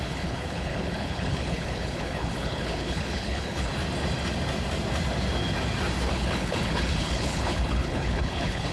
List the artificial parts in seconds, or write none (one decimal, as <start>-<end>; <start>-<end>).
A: 0.0-3.7; 6.1-8.7